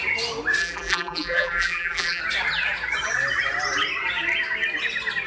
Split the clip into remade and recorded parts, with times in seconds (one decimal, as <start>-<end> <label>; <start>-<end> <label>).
0.0-0.6 recorded; 0.6-2.2 remade; 2.2-5.3 recorded